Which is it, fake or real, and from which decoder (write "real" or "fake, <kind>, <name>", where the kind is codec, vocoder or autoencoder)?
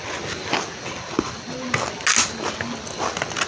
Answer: real